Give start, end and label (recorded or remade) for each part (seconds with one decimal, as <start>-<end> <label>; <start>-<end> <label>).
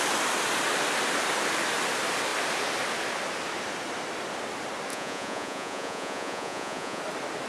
0.0-4.9 recorded; 4.9-7.0 remade; 7.0-7.5 recorded